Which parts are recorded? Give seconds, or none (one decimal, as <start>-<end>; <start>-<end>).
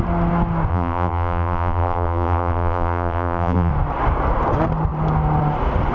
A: 0.0-0.7; 3.7-5.9